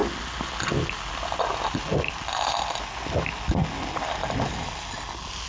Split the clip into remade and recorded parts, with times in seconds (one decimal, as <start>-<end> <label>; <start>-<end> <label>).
0.0-5.5 recorded